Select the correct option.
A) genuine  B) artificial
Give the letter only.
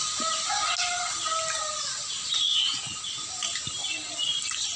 A